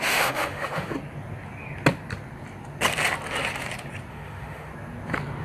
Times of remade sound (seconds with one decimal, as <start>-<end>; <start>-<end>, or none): 0.0-0.9; 4.1-4.7